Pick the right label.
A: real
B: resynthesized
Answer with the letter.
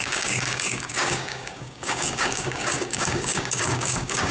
B